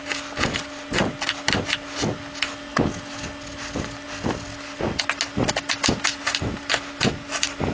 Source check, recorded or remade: recorded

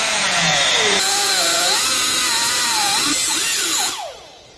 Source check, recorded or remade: remade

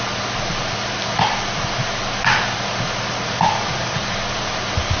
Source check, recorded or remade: recorded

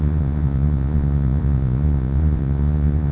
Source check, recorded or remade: remade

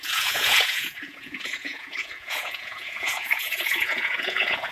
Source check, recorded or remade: remade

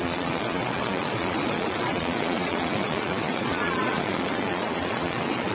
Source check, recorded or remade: remade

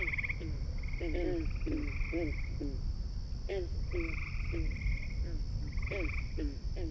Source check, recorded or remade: recorded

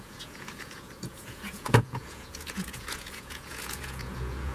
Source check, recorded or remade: remade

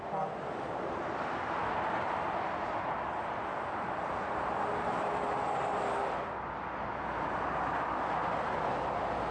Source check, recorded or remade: recorded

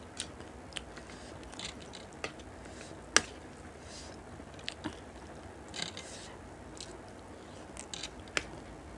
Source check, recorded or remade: recorded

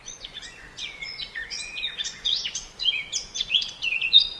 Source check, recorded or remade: remade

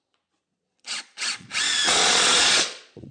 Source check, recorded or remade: remade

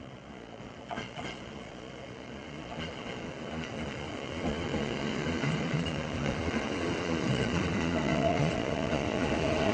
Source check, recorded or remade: remade